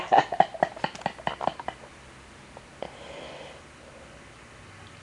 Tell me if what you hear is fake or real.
real